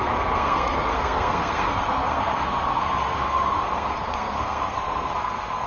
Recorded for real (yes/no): no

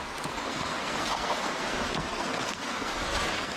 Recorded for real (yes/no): no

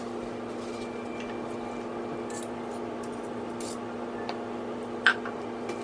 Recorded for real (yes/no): yes